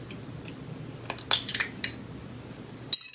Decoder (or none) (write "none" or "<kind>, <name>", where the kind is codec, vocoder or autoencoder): none